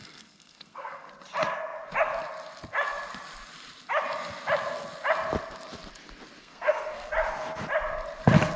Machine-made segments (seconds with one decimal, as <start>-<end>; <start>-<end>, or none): 0.0-1.1; 6.4-7.1